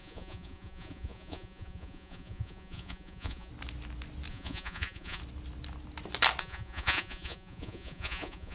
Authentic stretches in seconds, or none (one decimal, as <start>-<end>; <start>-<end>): 3.5-4.3; 5.2-6.4